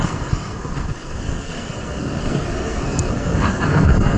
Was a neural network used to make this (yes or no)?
yes